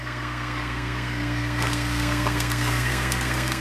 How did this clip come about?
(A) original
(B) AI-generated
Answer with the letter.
B